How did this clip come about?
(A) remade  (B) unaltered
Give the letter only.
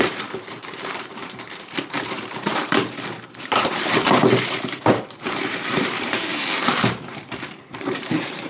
A